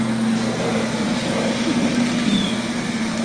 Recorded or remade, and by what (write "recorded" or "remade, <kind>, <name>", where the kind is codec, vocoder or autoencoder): recorded